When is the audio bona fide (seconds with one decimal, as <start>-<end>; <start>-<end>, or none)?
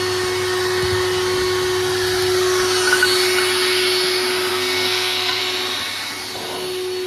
0.0-4.5; 5.4-7.1